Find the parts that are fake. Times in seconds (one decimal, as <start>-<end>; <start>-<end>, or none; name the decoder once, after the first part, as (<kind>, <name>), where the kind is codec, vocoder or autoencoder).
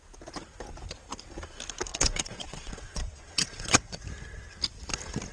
1.9-4.0 (vocoder, WaveNeXt)